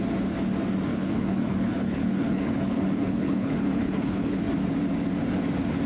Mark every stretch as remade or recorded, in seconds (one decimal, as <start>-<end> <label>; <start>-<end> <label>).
0.0-0.9 recorded; 0.9-4.4 remade; 4.4-5.9 recorded